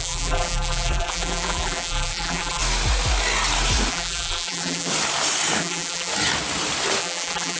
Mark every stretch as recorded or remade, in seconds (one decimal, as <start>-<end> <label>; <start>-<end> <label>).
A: 0.0-2.6 remade; 2.6-3.9 recorded; 3.9-4.9 remade; 4.9-5.6 recorded; 5.6-6.1 remade; 6.1-7.0 recorded; 7.0-7.6 remade